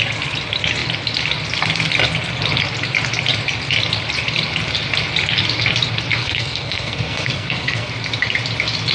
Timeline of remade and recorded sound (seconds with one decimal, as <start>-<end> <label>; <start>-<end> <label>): 0.0-6.2 recorded; 6.2-7.9 remade; 7.9-8.9 recorded